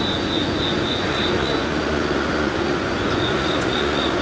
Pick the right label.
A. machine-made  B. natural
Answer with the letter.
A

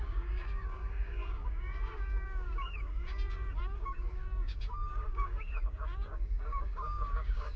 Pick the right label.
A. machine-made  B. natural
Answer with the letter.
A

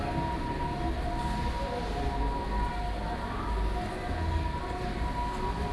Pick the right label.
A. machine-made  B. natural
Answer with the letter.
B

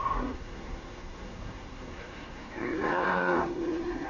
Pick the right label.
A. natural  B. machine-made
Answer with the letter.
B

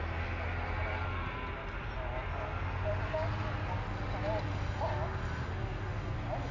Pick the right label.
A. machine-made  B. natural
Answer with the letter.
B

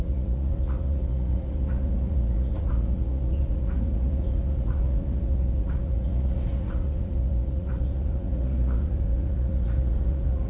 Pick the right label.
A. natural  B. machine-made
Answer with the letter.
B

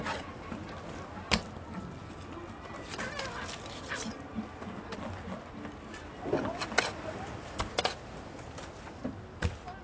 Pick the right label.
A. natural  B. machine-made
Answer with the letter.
A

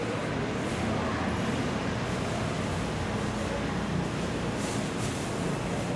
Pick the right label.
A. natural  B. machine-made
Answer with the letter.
A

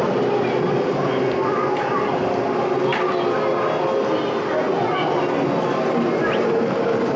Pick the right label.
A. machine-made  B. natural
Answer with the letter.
B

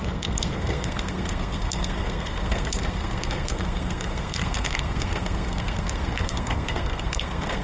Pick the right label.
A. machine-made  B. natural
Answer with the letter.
A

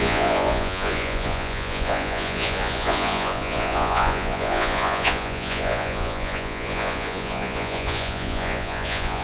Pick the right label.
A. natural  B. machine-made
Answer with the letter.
B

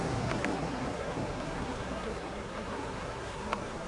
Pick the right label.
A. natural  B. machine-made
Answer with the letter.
B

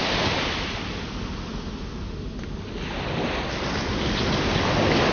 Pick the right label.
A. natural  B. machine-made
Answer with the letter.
A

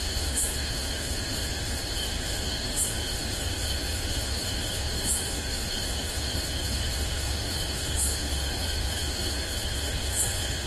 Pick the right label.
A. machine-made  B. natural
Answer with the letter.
A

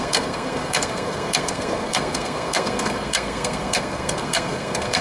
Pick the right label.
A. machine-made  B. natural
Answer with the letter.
A